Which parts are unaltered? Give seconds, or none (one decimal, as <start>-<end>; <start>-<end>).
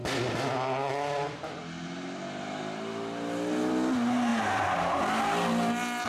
0.0-4.3; 5.0-6.1